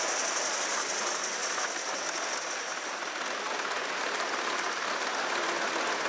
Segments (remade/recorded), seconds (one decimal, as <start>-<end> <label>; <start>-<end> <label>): 0.0-6.1 recorded